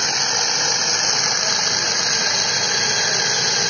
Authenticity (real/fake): real